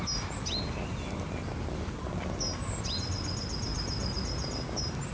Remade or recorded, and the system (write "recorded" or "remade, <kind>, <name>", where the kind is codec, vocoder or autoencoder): recorded